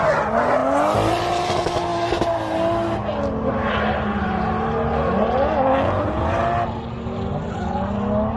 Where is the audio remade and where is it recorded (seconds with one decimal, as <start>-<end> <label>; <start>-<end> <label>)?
0.0-8.4 recorded